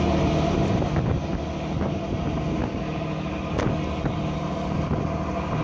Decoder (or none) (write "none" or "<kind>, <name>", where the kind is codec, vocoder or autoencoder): none